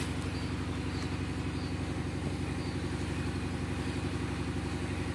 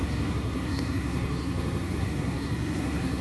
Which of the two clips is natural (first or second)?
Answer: first